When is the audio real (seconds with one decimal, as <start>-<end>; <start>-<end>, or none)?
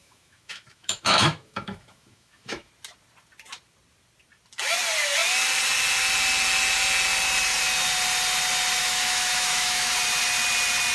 2.7-8.8; 9.9-10.9